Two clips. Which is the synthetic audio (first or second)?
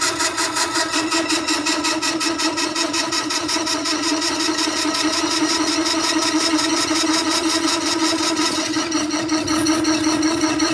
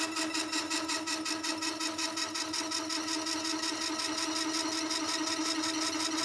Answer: first